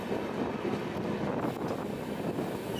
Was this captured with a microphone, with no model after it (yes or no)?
yes